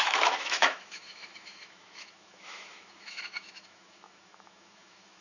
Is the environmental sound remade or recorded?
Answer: remade